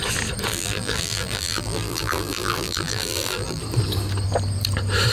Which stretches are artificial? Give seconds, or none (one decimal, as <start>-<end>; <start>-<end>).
0.5-3.6